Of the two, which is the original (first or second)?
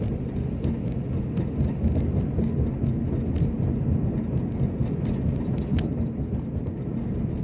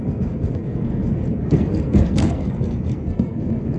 first